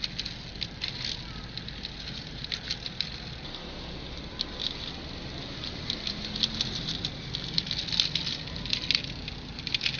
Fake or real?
real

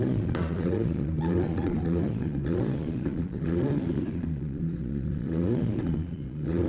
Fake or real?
fake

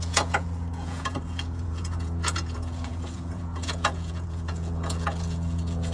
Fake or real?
fake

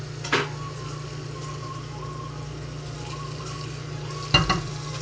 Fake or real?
real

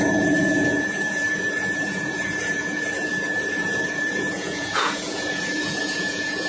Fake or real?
fake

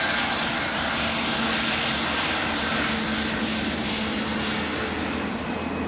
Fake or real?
real